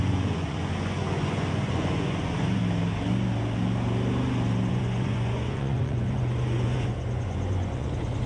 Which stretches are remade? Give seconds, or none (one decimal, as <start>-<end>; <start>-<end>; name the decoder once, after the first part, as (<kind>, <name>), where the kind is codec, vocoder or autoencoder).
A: 0.0-2.6 (vocoder, Vocos); 4.7-8.3